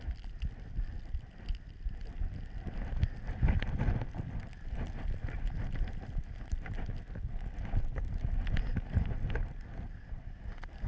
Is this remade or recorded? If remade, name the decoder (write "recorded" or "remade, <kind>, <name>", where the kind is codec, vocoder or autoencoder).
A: recorded